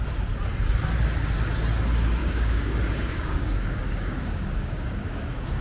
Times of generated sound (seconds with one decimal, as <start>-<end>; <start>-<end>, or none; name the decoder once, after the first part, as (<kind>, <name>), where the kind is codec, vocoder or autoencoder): 2.2-5.6 (codec, DAC)